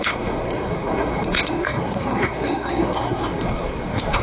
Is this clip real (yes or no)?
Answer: no